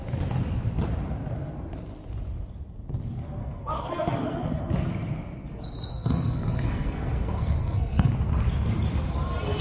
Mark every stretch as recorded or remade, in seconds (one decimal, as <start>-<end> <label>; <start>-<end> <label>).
0.0-3.4 recorded; 3.4-4.6 remade; 4.6-5.9 recorded; 5.9-8.1 remade; 8.1-9.6 recorded